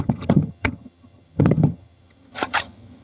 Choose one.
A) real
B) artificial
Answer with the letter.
B